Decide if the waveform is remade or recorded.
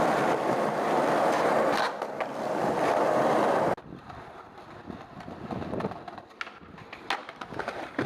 recorded